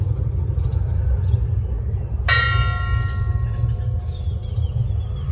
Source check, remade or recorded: recorded